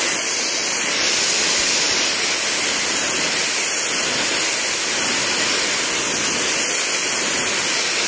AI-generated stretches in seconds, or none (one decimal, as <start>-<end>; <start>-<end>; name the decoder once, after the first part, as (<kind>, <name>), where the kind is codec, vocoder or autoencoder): 0.6-3.0 (vocoder, BigVGAN v2)